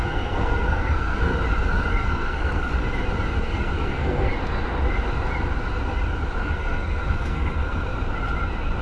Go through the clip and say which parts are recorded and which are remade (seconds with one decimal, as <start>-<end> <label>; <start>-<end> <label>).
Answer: 0.0-1.3 remade; 1.3-1.9 recorded; 1.9-2.7 remade; 2.7-3.4 recorded; 3.4-4.3 remade; 4.3-6.4 recorded; 6.4-7.9 remade; 7.9-8.8 recorded